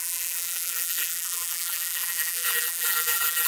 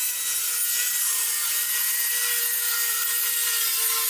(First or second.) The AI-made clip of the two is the first